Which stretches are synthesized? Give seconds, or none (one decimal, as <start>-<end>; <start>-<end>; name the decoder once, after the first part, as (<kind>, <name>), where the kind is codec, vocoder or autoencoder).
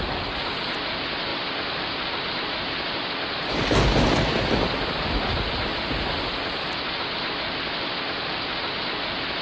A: none